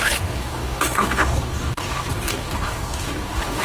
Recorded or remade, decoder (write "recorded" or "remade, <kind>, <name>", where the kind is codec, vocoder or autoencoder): remade, codec, DAC